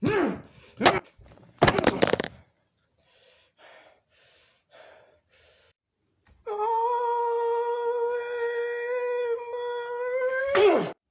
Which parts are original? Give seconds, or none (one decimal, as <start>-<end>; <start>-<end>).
0.0-1.0; 5.6-10.4